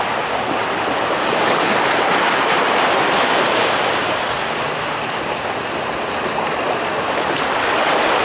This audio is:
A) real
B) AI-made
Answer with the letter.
A